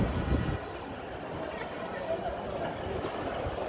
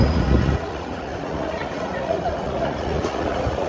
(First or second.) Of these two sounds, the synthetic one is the second